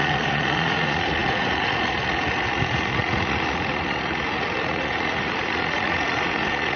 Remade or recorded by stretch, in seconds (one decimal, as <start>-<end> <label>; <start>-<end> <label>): 0.0-6.8 remade